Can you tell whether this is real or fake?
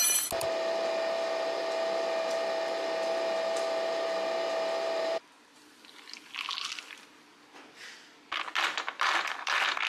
real